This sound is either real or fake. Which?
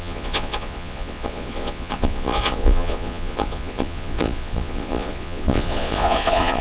fake